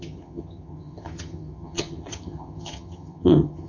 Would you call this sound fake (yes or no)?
yes